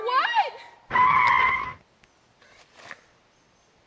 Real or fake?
real